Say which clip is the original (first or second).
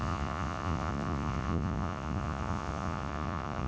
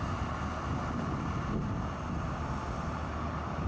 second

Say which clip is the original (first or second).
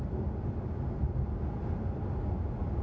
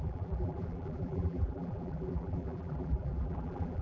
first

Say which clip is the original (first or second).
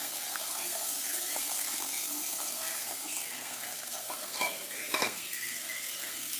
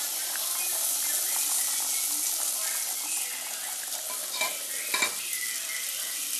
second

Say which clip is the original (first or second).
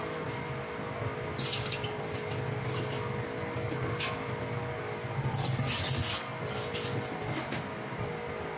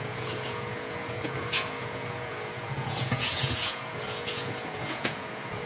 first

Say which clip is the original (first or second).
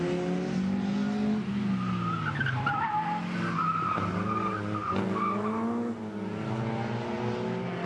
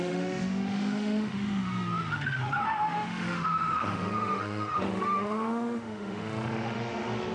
first